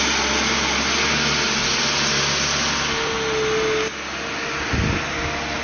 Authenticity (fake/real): real